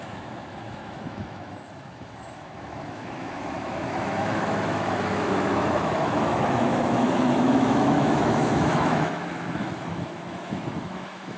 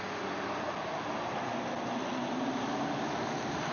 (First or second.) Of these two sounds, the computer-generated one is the first